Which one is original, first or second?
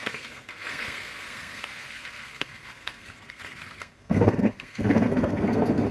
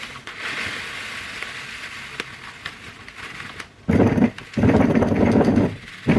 second